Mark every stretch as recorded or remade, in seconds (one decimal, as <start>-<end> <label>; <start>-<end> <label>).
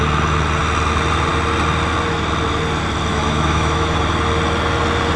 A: 0.0-3.1 recorded; 3.1-4.0 remade; 4.0-5.2 recorded